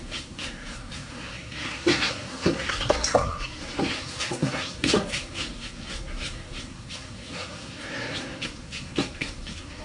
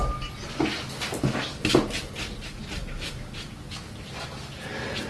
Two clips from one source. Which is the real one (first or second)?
second